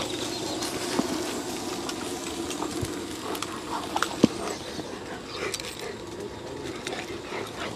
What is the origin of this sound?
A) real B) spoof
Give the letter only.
A